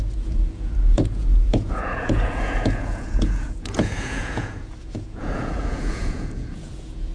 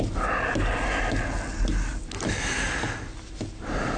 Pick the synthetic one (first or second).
first